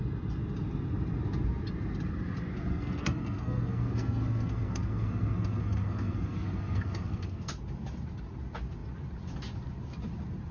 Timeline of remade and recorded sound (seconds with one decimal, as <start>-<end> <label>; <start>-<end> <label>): 0.0-2.7 recorded; 2.7-7.5 remade; 7.5-10.5 recorded